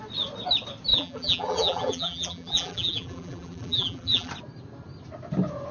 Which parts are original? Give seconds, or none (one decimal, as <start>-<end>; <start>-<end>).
0.0-0.9; 4.3-5.7